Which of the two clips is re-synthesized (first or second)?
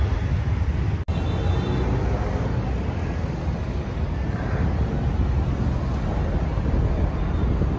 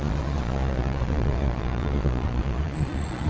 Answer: second